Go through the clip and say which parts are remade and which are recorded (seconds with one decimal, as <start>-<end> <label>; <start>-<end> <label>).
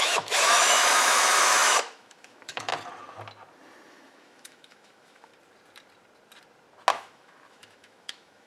0.0-2.7 remade; 2.7-3.9 recorded; 3.9-5.3 remade; 5.3-6.9 recorded; 6.9-8.5 remade